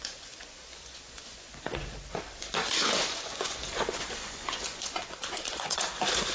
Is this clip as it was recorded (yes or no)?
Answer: no